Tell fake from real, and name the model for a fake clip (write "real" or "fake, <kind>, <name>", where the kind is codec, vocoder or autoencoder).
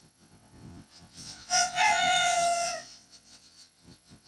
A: fake, vocoder, WaveNeXt